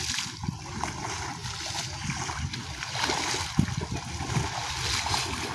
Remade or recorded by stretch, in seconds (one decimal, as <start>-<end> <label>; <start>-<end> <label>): 0.0-5.5 recorded